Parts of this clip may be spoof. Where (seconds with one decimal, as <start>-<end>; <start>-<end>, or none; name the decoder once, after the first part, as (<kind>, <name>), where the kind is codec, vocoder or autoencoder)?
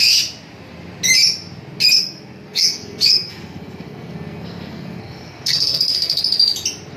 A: 2.0-6.2 (codec, SNAC)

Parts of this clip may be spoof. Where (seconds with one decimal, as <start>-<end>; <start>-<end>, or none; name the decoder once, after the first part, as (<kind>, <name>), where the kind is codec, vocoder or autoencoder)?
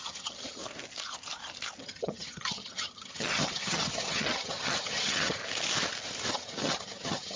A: 0.0-0.6 (vocoder, HiFi-GAN); 1.8-5.4; 6.3-7.4